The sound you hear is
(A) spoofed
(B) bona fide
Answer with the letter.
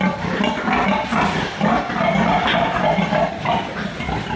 B